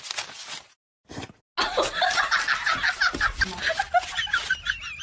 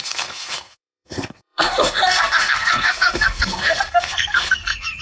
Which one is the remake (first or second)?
second